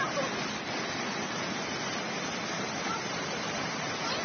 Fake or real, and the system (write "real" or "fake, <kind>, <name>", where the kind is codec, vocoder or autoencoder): fake, vocoder, BigVGAN v2